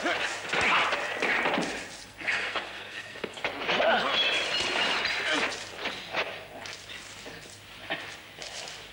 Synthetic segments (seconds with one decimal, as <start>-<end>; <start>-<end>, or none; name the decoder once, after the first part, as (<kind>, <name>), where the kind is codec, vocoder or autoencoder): 2.0-3.4 (codec, SNAC)